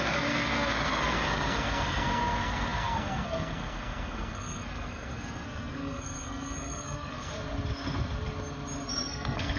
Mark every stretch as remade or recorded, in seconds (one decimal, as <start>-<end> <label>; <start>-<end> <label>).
0.0-7.3 remade; 7.3-8.9 recorded; 8.9-9.6 remade